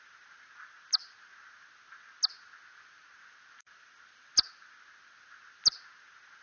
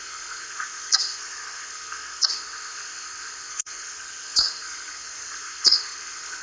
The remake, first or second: second